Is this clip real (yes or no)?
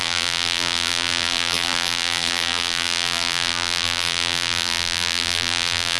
no